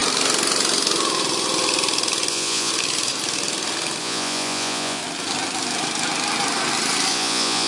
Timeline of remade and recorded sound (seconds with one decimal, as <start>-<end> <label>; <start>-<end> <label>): 0.0-2.3 recorded; 2.3-2.7 remade; 2.7-4.0 recorded; 4.0-5.0 remade; 5.0-7.1 recorded; 7.1-7.7 remade